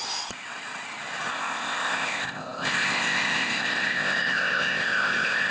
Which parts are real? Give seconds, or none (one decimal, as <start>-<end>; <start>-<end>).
0.0-1.3